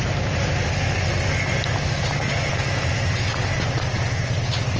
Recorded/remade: recorded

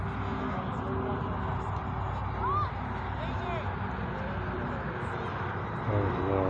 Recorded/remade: recorded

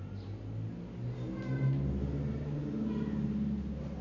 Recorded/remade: recorded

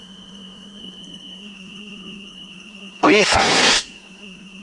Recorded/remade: remade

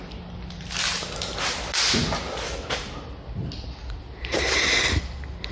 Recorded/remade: recorded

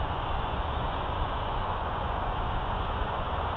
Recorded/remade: remade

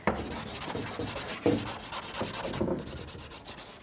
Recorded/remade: recorded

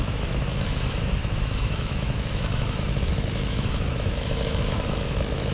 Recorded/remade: remade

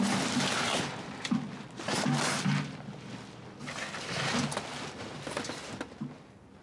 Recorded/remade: recorded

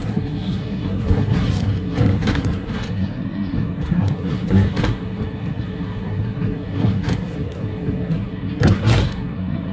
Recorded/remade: remade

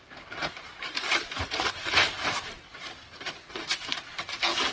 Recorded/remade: remade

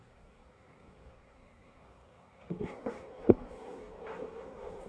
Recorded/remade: remade